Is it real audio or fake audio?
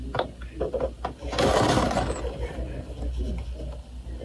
real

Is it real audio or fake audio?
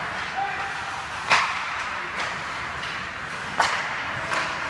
real